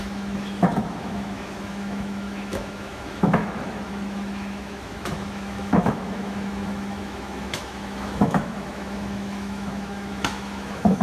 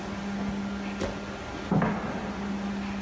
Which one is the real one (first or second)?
second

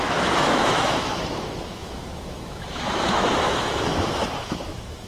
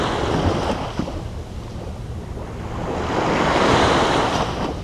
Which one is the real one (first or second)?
second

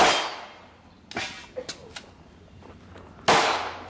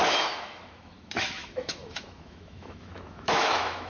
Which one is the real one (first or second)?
first